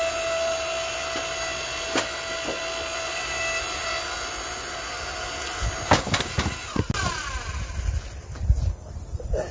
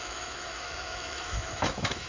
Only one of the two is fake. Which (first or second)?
second